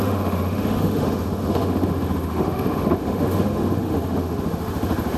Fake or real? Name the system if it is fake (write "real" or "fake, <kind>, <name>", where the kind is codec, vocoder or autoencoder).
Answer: fake, autoencoder, DAC-VAE